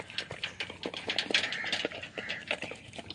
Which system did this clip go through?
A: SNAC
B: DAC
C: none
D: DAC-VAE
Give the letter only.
C